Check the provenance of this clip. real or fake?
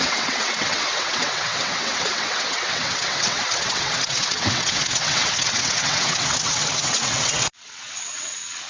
fake